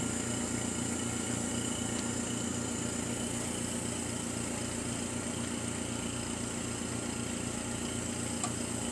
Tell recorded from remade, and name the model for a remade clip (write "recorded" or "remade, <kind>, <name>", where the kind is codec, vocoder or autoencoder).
recorded